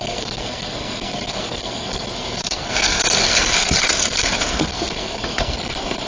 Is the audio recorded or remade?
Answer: remade